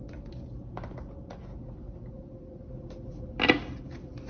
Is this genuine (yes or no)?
yes